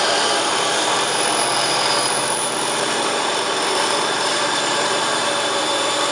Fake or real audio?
fake